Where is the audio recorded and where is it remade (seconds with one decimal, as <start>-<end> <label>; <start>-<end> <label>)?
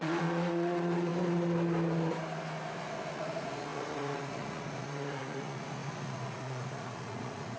0.0-1.1 remade; 1.1-3.1 recorded; 3.1-7.6 remade